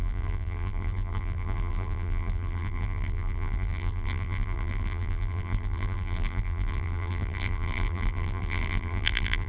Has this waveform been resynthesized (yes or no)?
yes